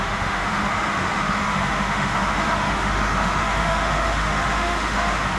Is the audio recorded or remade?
remade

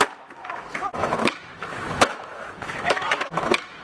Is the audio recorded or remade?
remade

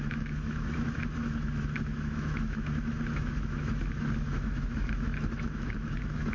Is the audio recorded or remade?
remade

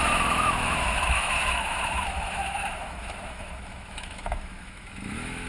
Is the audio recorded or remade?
remade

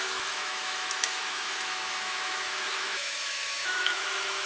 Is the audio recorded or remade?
remade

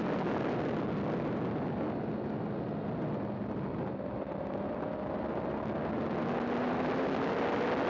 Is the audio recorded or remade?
recorded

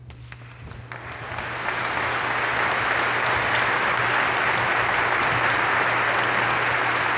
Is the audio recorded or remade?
recorded